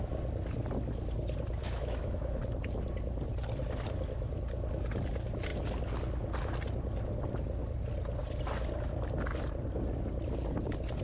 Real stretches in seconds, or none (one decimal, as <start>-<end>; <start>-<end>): 0.0-1.6; 2.4-11.0